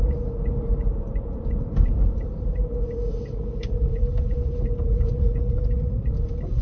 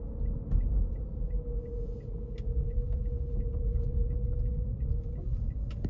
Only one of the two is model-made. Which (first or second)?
first